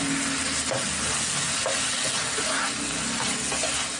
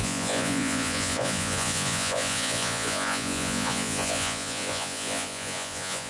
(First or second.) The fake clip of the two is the second